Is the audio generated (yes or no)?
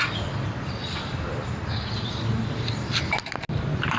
no